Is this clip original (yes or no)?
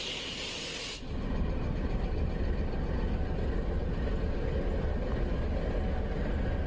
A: yes